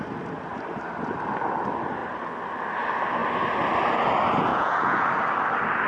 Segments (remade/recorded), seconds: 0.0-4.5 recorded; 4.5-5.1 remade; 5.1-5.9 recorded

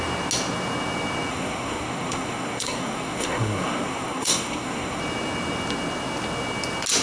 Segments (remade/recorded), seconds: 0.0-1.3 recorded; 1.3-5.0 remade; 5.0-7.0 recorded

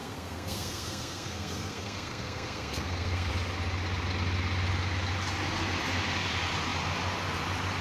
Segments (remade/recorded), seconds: 0.0-3.3 remade; 3.3-7.8 recorded

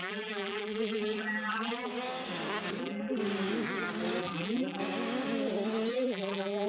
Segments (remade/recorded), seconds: 0.0-1.9 remade; 1.9-2.8 recorded; 2.8-3.2 remade; 3.2-4.2 recorded; 4.2-4.8 remade; 4.8-5.9 recorded; 5.9-6.7 remade

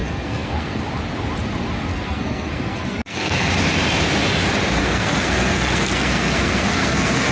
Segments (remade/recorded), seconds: 0.0-0.8 remade; 0.8-1.9 recorded; 1.9-3.5 remade; 3.5-4.8 recorded; 4.8-7.3 remade

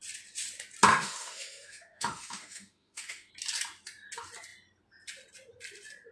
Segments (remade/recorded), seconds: 0.0-0.9 recorded; 0.9-3.3 remade; 3.3-6.1 recorded

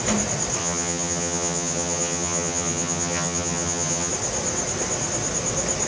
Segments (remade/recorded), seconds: 0.0-0.6 recorded; 0.6-4.1 remade; 4.1-5.9 recorded

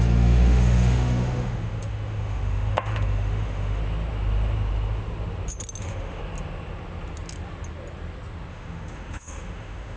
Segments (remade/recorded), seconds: 0.0-3.8 remade; 3.8-5.8 recorded; 5.8-6.2 remade; 6.2-8.5 recorded; 8.5-10.0 remade